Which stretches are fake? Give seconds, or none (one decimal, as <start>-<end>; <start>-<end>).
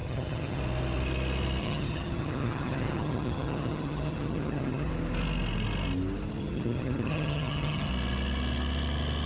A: 0.0-0.6; 1.6-4.9; 6.4-7.9